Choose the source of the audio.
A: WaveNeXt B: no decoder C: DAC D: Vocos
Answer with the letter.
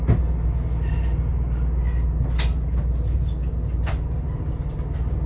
B